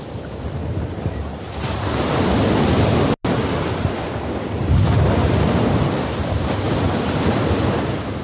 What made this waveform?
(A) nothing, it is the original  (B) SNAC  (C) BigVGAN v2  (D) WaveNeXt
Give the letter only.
A